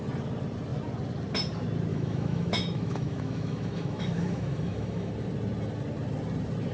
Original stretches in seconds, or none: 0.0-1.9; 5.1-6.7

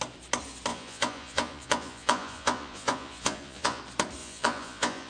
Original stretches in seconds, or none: 0.0-0.7; 3.8-4.2

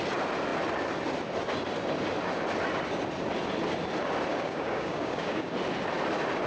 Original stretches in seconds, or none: 0.0-4.3; 5.5-6.5

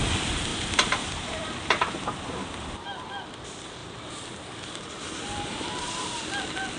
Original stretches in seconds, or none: 0.0-0.5; 2.8-3.8; 6.2-6.8